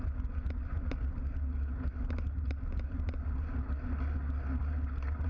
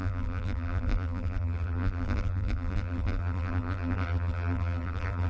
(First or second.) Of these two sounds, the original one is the first